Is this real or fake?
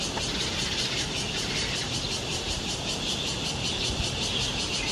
real